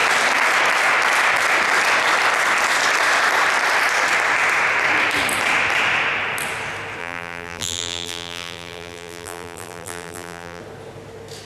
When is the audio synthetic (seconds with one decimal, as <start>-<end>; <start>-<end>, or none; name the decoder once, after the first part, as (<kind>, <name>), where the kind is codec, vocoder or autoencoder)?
7.0-10.6 (vocoder, BigVGAN v2)

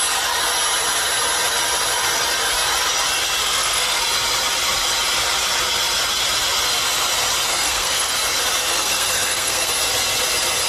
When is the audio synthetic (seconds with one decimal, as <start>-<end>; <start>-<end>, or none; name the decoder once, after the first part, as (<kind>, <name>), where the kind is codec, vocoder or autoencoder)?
3.4-4.0 (codec, SNAC); 7.5-8.1; 8.7-9.7

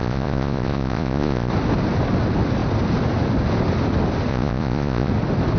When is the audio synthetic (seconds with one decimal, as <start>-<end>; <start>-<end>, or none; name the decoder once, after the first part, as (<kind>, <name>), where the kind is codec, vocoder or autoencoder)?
0.0-1.5 (vocoder, Vocos); 4.3-5.1

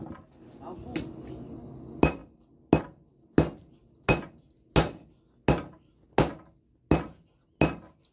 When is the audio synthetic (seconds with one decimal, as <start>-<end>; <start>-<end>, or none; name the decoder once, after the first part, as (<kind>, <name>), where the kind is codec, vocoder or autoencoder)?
none

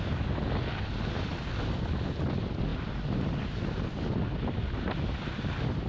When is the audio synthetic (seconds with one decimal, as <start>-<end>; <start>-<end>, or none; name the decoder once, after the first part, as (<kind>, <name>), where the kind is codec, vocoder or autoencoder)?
none

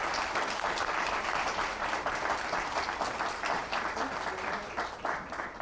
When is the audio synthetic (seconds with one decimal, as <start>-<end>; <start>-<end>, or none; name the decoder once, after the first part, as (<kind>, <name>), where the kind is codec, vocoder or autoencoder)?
none